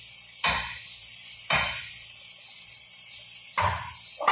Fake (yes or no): yes